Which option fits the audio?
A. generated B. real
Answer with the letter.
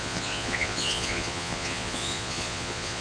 A